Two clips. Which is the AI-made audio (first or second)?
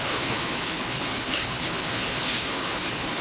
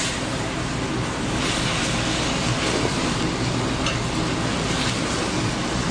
first